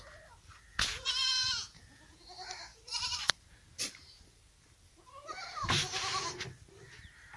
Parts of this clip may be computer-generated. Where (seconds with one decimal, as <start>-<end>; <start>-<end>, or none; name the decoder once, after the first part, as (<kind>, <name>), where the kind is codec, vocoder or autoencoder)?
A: 0.7-2.2 (vocoder, Vocos)